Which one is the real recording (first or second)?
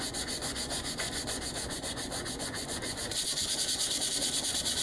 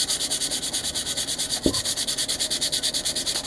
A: second